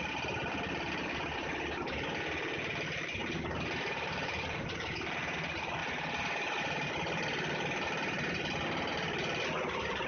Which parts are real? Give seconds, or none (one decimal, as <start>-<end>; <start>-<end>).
3.2-3.8; 5.8-6.6